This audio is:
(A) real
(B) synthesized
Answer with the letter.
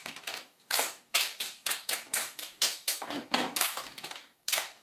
B